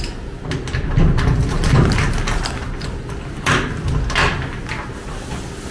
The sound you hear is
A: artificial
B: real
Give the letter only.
B